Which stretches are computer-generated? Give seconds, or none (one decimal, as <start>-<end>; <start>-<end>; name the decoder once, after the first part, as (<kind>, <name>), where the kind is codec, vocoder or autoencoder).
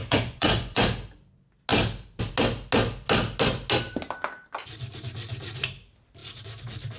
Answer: 0.0-0.8 (vocoder, Vocos)